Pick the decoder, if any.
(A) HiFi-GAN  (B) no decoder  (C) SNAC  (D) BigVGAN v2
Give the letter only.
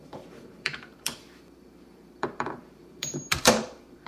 D